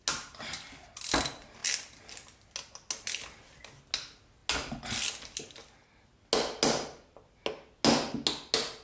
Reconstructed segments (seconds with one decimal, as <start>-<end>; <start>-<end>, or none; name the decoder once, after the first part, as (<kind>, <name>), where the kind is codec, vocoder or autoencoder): none